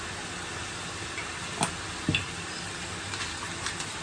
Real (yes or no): yes